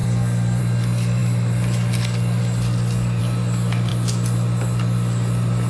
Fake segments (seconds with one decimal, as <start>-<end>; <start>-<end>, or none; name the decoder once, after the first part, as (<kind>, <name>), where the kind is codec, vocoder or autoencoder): 0.0-0.6 (codec, SNAC)